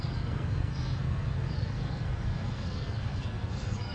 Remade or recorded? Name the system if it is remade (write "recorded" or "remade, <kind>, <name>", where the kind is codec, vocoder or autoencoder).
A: remade, codec, SNAC